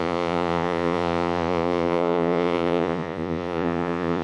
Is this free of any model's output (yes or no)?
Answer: no